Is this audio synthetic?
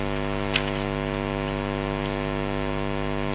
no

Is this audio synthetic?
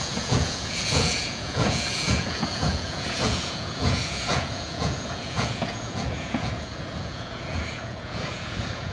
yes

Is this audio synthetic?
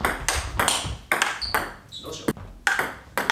no